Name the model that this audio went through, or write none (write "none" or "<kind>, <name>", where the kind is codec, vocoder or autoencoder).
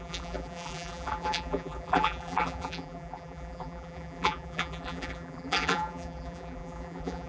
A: vocoder, BigVGAN v2